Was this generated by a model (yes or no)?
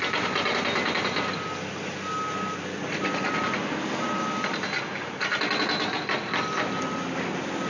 no